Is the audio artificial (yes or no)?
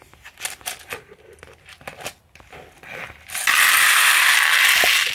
no